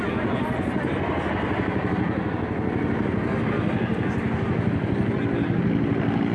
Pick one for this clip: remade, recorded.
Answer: recorded